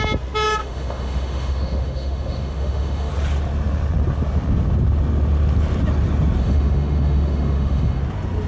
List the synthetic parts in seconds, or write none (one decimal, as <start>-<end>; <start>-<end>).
0.6-3.1; 6.4-8.0